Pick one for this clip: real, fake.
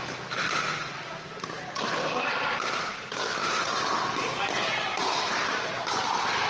real